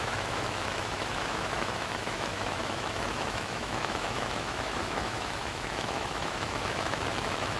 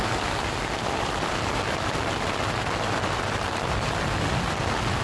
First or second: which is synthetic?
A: first